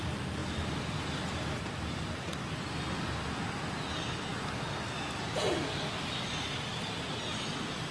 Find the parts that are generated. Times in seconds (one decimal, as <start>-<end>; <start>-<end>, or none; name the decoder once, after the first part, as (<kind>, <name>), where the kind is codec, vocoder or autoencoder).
none